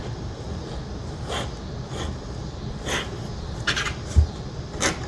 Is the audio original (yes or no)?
yes